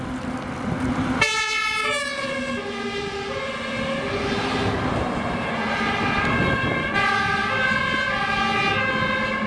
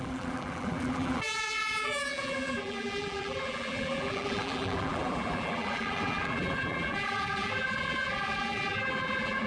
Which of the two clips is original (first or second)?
first